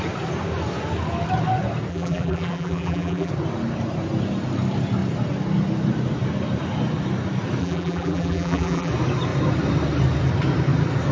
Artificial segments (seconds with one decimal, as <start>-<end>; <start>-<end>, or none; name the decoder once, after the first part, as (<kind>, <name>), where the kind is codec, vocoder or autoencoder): 1.9-3.3 (vocoder, BigVGAN v2); 7.6-8.9